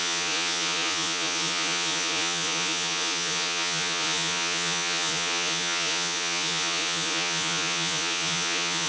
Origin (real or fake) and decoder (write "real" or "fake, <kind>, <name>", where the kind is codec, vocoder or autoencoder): fake, vocoder, Vocos